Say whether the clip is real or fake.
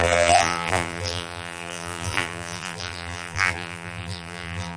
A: fake